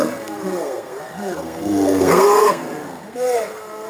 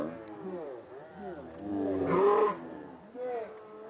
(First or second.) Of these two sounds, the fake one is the first